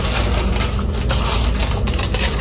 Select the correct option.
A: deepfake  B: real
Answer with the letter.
B